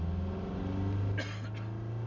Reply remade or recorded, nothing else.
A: recorded